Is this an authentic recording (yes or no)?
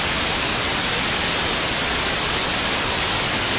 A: yes